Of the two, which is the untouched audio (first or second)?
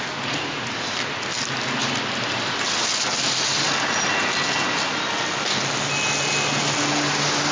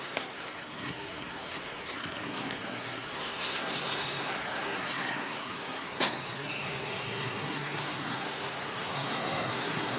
first